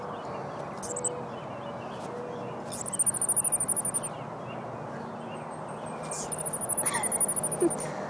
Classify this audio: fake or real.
real